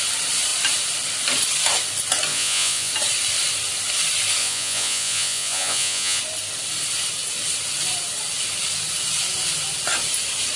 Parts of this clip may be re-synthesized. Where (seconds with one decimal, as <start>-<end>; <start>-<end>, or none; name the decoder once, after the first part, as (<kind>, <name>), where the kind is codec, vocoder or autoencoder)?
2.3-2.9 (vocoder, Vocos); 4.4-6.2